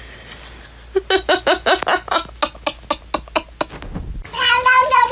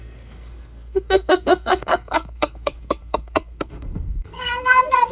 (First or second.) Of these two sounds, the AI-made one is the second